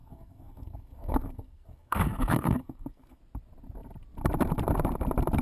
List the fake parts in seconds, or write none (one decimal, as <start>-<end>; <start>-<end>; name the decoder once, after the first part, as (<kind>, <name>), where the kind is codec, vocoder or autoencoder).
0.0-3.2 (codec, SNAC)